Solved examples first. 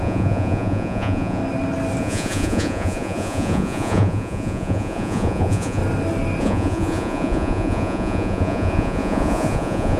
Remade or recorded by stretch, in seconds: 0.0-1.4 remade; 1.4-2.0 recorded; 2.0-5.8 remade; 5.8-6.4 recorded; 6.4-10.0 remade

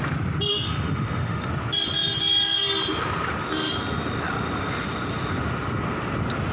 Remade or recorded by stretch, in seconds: 0.0-0.5 recorded; 0.5-1.5 remade; 1.5-6.5 recorded

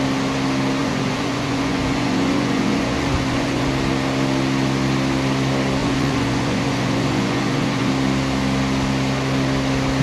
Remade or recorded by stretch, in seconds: 0.0-0.8 recorded; 0.8-3.7 remade; 3.7-5.8 recorded; 5.8-7.9 remade; 7.9-10.0 recorded

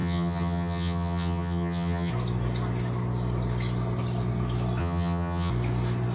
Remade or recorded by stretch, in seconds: 0.0-2.1 remade; 2.1-4.8 recorded; 4.8-5.5 remade; 5.5-6.1 recorded

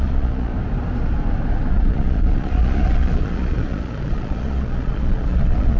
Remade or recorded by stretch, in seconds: 0.0-0.5 remade; 0.5-1.7 recorded; 1.7-5.8 remade

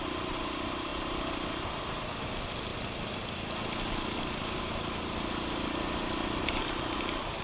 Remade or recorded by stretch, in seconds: 0.0-7.4 recorded